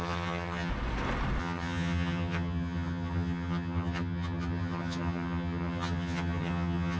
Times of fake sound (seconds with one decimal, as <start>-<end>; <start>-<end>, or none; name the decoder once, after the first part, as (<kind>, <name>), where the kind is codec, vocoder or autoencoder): 0.0-0.7 (vocoder, HiFi-GAN); 1.4-7.0